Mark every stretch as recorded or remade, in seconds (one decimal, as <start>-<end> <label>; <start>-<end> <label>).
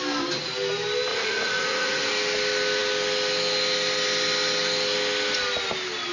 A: 0.0-1.1 recorded; 1.1-2.1 remade; 2.1-6.1 recorded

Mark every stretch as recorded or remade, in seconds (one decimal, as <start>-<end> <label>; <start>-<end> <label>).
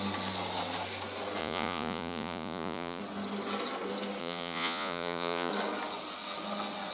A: 0.0-1.4 recorded; 1.4-3.0 remade; 3.0-4.2 recorded; 4.2-5.5 remade; 5.5-6.9 recorded